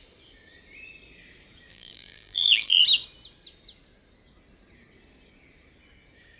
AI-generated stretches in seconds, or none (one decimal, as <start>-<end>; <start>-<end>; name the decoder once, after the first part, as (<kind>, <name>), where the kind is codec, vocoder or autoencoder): 1.7-2.8 (vocoder, BigVGAN v2)